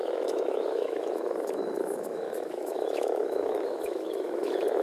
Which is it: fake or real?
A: fake